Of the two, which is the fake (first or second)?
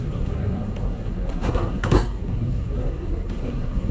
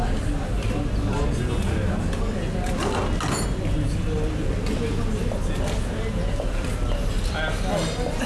first